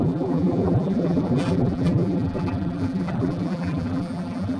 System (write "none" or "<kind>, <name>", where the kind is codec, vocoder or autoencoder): vocoder, BigVGAN v2